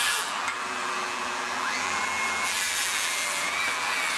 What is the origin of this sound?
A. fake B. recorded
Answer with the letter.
A